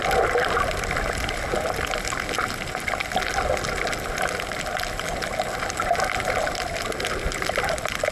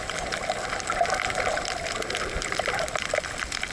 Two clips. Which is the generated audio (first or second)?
second